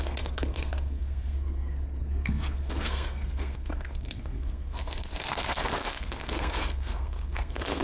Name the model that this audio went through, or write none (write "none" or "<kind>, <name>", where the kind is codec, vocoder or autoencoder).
codec, SNAC